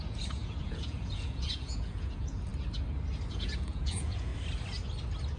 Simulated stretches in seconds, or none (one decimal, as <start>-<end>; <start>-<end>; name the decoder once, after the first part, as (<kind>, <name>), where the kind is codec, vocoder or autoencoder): 0.0-2.5 (vocoder, Vocos); 3.3-4.3